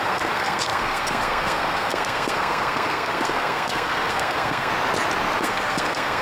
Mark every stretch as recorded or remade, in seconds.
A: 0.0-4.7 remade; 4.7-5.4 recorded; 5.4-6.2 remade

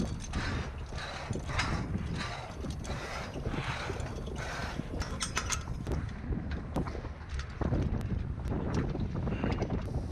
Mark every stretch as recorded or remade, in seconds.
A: 0.0-10.1 recorded

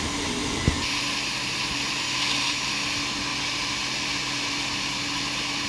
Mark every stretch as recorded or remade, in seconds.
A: 0.0-5.7 recorded

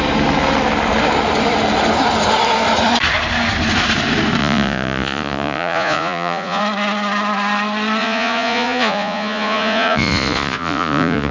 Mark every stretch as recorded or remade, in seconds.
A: 0.0-4.4 recorded; 4.4-6.6 remade; 6.6-8.0 recorded; 8.0-11.3 remade

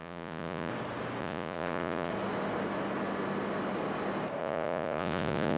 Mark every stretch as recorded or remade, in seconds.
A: 0.0-0.7 remade; 0.7-1.2 recorded; 1.2-2.1 remade; 2.1-4.4 recorded; 4.4-5.6 remade

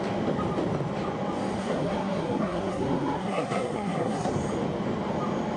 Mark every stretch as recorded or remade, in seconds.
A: 0.0-1.6 recorded; 1.6-4.3 remade; 4.3-5.6 recorded